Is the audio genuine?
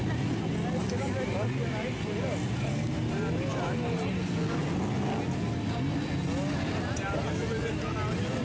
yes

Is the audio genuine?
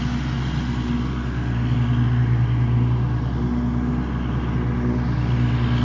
yes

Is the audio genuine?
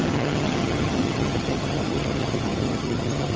no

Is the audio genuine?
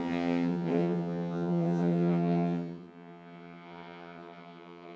no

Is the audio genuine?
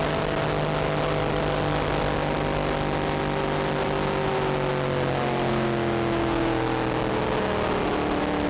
yes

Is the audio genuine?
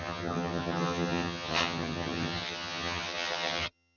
no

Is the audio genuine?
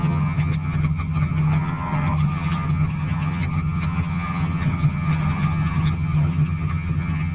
no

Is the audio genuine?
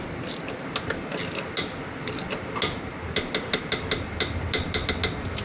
yes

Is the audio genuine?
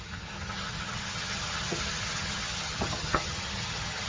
no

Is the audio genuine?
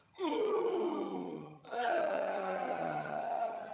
no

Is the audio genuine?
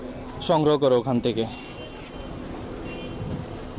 yes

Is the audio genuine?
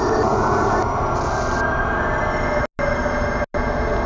yes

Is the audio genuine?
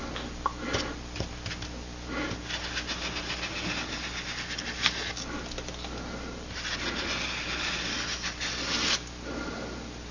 yes